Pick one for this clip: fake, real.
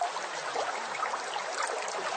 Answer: real